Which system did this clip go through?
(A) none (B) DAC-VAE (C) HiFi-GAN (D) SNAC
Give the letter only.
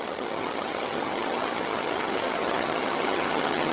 C